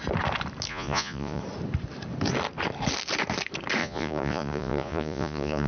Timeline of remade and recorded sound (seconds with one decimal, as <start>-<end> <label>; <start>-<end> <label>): 0.0-0.7 recorded; 0.7-1.4 remade; 1.4-3.8 recorded; 3.8-5.7 remade